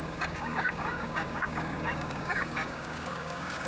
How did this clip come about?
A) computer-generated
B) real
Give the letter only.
A